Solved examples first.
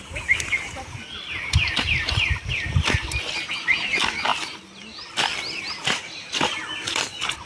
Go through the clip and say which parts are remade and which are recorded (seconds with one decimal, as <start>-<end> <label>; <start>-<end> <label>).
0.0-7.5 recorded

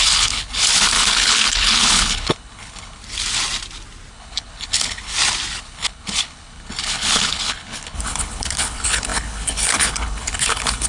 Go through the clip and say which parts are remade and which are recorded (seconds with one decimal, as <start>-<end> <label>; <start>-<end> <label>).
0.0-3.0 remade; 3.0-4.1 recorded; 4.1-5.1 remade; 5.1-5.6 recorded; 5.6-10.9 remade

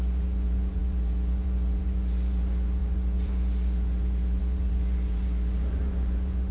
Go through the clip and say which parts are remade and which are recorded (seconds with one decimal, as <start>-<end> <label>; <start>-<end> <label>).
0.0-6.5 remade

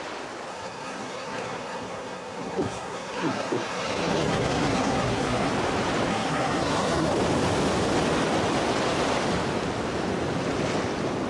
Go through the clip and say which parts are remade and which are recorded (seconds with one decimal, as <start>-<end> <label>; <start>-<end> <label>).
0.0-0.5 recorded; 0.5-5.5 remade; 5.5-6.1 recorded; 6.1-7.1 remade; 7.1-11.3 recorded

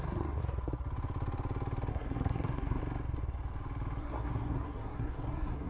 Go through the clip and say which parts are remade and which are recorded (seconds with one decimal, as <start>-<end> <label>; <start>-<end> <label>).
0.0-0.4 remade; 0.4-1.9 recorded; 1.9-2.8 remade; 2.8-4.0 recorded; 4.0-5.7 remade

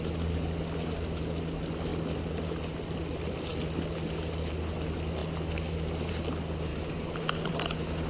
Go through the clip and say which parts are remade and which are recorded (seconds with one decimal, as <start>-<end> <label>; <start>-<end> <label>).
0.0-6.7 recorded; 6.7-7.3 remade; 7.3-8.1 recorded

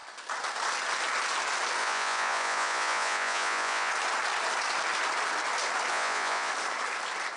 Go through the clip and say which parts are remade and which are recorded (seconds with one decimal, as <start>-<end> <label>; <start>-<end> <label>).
0.0-1.8 recorded; 1.8-3.9 remade; 3.9-5.9 recorded; 5.9-6.5 remade; 6.5-7.4 recorded

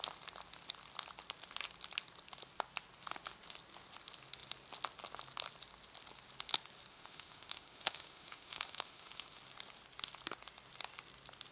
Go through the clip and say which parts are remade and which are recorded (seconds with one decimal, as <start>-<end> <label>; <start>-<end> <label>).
0.0-6.9 recorded; 6.9-9.4 remade; 9.4-11.5 recorded